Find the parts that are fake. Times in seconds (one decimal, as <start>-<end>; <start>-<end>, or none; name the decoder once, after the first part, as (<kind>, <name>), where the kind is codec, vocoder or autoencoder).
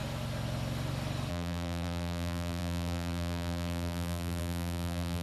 1.3-5.2 (vocoder, BigVGAN v2)